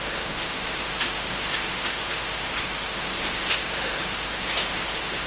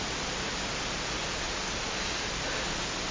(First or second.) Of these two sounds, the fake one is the first